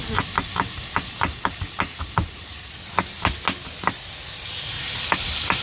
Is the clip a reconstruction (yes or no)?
no